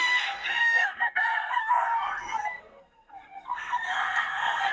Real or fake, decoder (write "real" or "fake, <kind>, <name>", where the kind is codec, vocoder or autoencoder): fake, codec, SNAC